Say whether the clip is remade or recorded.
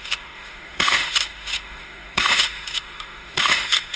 remade